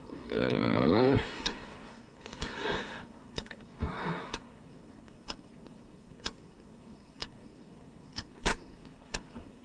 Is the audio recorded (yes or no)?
no